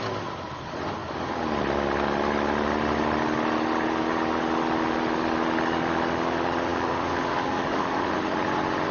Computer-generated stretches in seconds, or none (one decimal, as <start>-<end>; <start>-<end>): 6.7-8.0